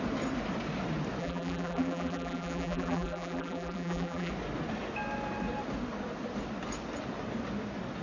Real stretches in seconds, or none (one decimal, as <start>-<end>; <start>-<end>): 0.0-1.2; 4.3-8.0